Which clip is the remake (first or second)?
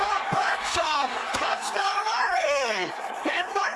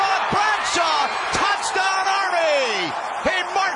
first